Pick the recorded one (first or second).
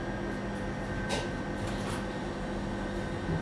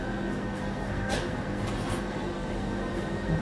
first